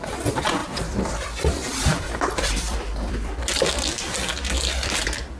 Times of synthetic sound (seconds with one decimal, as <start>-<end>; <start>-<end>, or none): 0.6-3.7

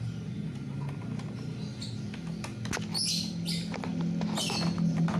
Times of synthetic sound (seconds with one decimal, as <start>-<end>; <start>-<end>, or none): none

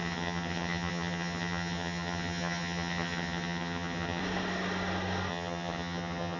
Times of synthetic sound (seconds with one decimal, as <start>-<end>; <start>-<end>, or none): 0.0-4.2; 5.3-6.4

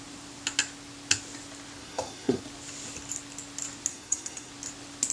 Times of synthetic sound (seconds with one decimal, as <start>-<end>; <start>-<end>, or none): 1.8-2.4; 3.9-4.5

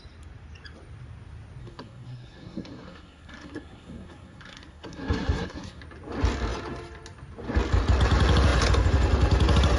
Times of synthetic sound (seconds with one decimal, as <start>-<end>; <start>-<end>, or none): 1.6-5.8

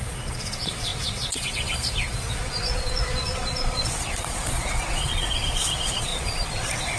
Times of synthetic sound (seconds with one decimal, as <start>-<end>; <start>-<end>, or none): 0.0-7.0

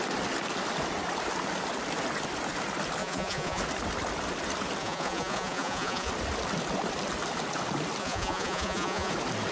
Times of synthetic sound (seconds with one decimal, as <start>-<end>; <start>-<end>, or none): 3.0-3.6; 4.8-6.1; 8.0-9.1

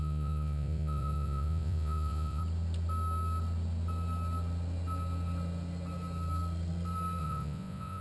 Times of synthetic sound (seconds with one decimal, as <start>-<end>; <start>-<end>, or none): 0.0-2.4; 7.2-8.0